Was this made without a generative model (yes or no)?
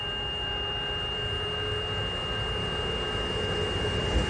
yes